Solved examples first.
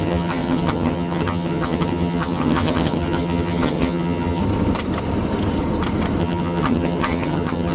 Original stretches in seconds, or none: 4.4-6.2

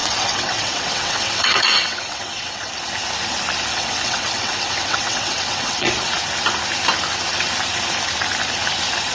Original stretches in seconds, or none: 2.7-3.7; 5.9-9.1

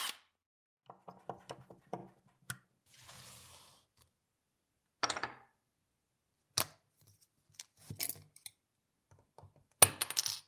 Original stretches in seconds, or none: 0.0-10.5

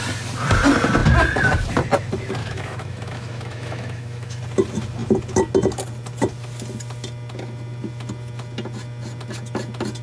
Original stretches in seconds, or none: 0.0-2.4; 4.4-10.0

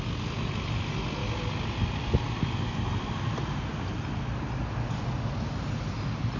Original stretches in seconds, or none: 0.0-6.4